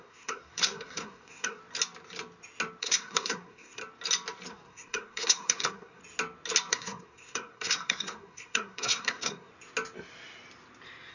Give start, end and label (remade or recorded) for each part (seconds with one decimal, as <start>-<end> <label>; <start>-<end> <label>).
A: 0.0-1.6 remade; 1.6-2.8 recorded; 2.8-3.8 remade; 3.8-4.5 recorded; 4.5-6.0 remade; 6.0-6.7 recorded; 6.7-9.5 remade; 9.5-11.1 recorded